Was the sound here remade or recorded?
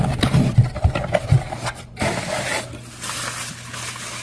recorded